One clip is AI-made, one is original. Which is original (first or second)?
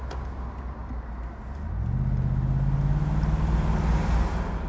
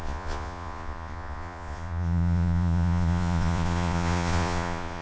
first